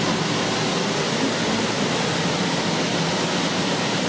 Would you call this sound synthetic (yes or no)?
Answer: no